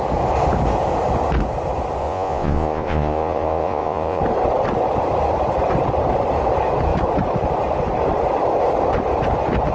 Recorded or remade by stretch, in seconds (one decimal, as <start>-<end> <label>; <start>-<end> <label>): 0.0-2.0 recorded; 2.0-4.2 remade; 4.2-9.7 recorded